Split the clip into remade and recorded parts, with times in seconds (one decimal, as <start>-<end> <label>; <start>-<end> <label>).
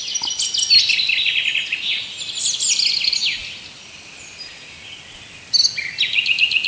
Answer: 0.0-6.7 recorded